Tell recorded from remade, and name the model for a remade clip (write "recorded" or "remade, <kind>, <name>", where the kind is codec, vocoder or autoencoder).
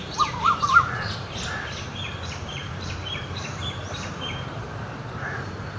remade, vocoder, BigVGAN v2